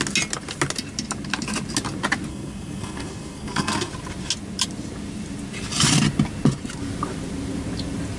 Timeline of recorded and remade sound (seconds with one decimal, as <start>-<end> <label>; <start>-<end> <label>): 0.0-2.3 recorded; 2.3-3.9 remade; 3.9-8.2 recorded